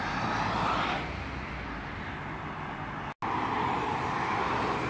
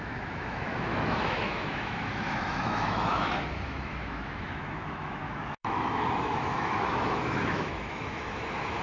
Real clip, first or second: first